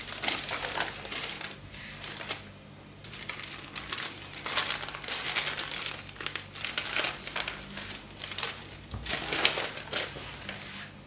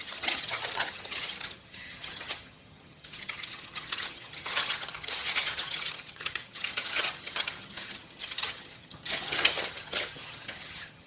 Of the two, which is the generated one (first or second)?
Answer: second